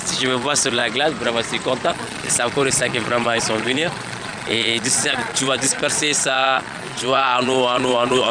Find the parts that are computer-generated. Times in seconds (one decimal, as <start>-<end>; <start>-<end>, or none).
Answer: 0.0-0.8; 1.9-8.3